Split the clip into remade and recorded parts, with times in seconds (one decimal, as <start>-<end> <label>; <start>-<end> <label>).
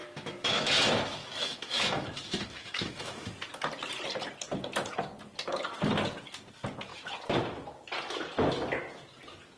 0.0-0.7 remade; 0.7-1.2 recorded; 1.2-3.3 remade; 3.3-9.6 recorded